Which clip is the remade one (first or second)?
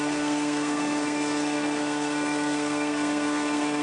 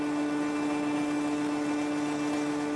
first